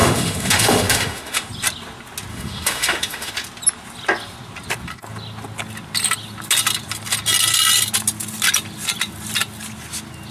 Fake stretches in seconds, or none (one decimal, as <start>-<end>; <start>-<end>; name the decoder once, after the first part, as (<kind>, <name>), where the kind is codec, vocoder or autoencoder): 0.0-1.5 (autoencoder, DAC-VAE); 2.3-3.3